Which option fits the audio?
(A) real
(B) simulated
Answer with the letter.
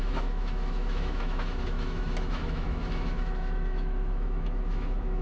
B